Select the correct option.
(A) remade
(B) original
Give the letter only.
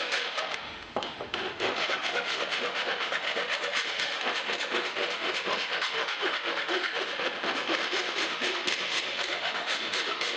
A